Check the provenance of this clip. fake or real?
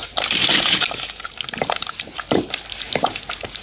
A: fake